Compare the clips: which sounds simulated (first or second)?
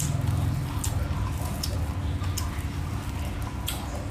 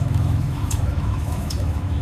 second